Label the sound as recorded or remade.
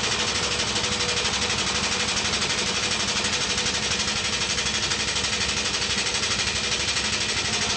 recorded